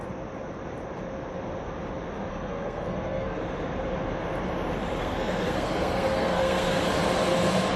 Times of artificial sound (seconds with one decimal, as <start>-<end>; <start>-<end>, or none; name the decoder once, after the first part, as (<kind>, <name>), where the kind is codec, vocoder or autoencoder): 2.3-3.4 (codec, SNAC); 5.0-6.8